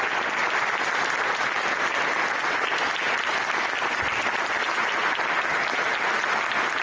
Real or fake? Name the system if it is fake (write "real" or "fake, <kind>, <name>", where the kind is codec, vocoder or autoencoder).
real